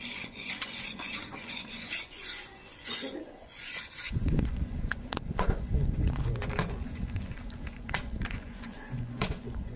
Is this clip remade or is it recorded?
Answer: remade